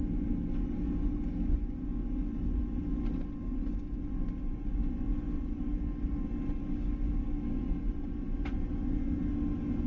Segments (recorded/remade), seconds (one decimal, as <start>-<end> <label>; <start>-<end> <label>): 0.0-6.6 recorded; 6.6-7.6 remade; 7.6-9.9 recorded